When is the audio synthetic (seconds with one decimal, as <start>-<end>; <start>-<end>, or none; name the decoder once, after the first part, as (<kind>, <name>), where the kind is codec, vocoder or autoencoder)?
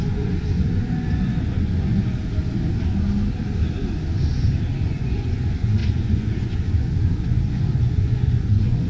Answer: 0.0-2.2 (vocoder, Vocos); 4.8-8.9